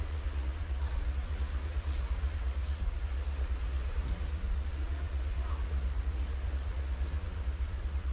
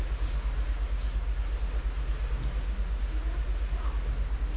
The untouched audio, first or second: second